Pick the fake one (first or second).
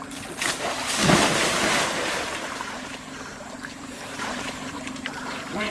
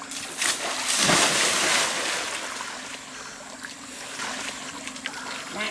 first